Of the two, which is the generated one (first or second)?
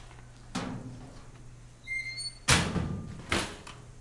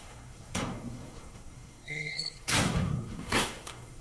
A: second